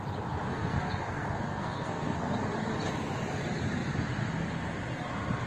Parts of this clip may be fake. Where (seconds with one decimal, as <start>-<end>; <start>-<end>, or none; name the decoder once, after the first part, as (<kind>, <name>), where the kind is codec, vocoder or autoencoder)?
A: 0.5-2.3 (codec, SNAC)